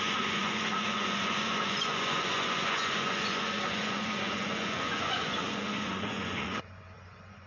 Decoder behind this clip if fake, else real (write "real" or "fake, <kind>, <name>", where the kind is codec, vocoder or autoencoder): fake, vocoder, Vocos